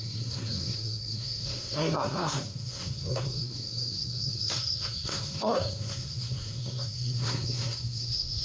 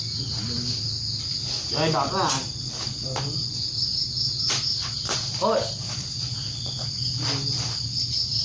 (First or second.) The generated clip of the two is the first